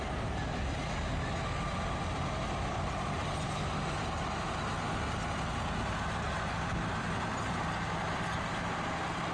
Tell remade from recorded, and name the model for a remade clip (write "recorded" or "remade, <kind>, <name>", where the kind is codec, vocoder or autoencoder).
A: recorded